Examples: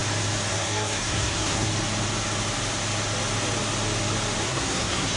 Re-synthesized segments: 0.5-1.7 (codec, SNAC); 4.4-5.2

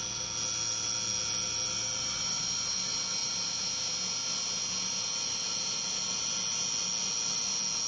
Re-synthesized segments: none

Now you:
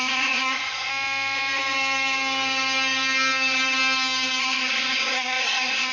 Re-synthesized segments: 0.0-0.9 (codec, SNAC); 4.4-5.9